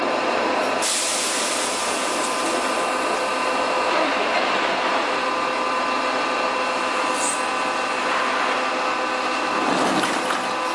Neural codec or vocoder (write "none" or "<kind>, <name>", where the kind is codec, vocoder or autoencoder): none